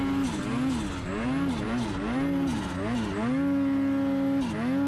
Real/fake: real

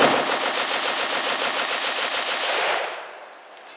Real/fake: real